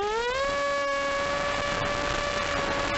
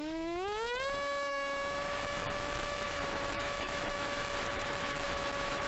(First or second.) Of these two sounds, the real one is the first